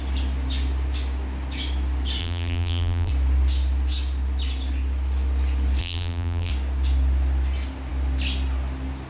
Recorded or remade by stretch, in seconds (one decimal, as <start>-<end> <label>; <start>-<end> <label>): 0.0-2.2 recorded; 2.2-3.1 remade; 3.1-5.8 recorded; 5.8-6.5 remade; 6.5-9.1 recorded